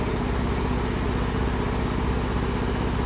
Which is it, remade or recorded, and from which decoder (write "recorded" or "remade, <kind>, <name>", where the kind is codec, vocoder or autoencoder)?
recorded